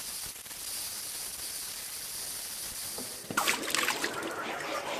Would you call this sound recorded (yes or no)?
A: yes